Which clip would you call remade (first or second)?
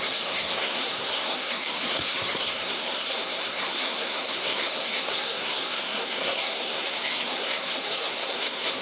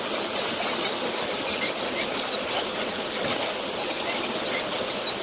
first